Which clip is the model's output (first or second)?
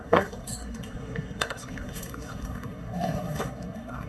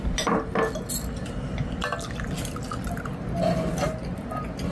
first